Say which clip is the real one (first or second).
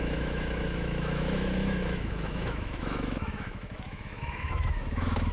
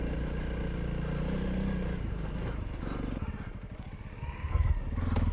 second